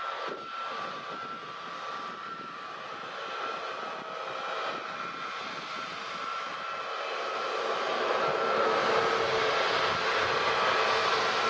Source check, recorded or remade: recorded